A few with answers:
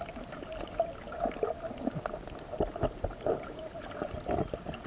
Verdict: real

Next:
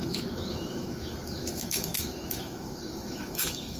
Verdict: fake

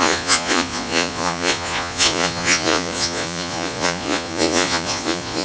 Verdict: fake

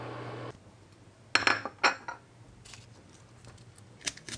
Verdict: real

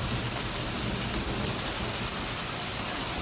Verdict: real